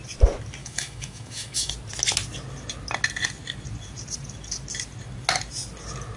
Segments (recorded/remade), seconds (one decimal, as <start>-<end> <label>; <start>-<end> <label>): 0.0-0.6 recorded; 0.6-1.7 remade; 1.7-6.2 recorded